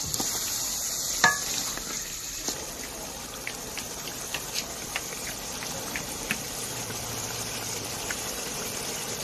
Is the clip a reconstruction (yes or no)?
yes